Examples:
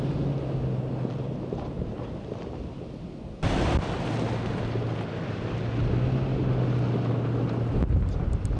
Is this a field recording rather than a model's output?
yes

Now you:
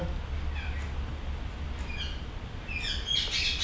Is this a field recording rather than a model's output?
yes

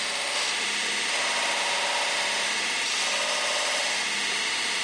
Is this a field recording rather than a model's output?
yes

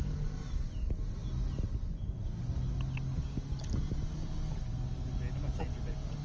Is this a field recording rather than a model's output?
yes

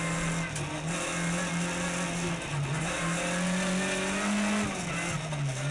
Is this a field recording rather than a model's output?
yes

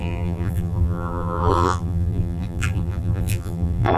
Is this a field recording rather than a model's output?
no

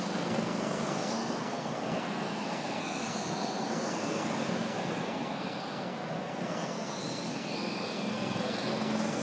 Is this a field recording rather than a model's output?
no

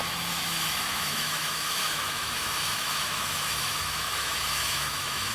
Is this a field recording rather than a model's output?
no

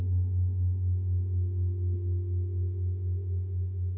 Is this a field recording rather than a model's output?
no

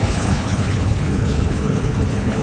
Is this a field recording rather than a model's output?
no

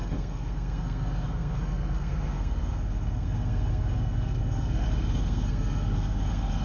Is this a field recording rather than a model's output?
no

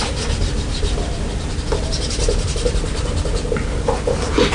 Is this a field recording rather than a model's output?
yes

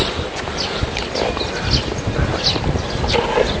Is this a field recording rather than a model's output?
yes